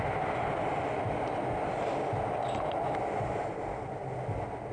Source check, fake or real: real